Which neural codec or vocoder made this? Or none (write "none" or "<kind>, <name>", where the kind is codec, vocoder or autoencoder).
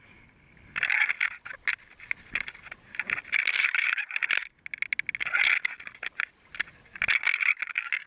none